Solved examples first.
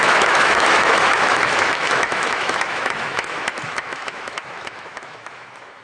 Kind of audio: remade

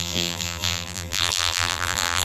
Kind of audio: remade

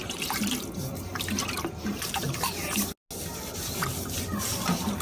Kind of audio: recorded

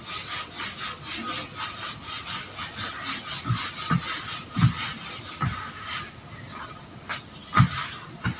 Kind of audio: recorded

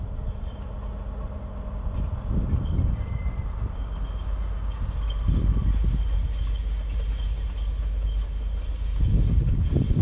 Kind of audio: recorded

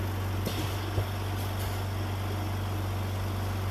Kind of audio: recorded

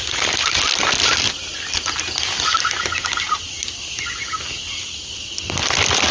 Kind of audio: recorded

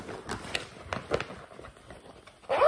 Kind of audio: recorded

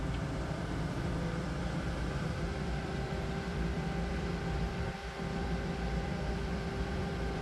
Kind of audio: remade